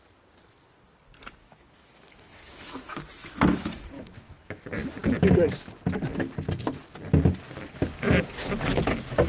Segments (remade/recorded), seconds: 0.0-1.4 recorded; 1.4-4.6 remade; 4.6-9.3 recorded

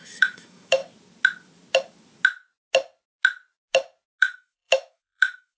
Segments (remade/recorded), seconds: 0.0-0.8 remade; 0.8-4.2 recorded; 4.2-5.6 remade

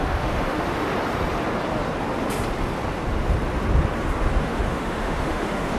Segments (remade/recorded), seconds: 0.0-0.9 remade; 0.9-4.4 recorded; 4.4-5.8 remade